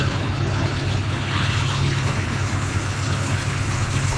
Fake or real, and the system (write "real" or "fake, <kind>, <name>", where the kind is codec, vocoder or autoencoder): fake, codec, HILCodec